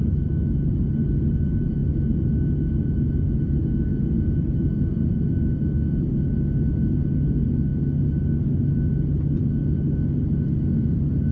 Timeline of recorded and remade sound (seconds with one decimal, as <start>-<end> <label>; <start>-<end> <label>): 0.0-11.3 recorded